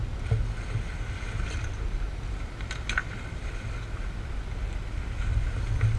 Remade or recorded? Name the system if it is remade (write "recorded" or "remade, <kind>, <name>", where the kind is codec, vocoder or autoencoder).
recorded